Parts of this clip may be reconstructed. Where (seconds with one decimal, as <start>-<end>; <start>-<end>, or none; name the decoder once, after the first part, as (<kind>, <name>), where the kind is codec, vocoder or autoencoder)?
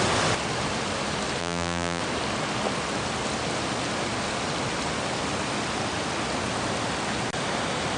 1.4-2.0 (vocoder, BigVGAN v2)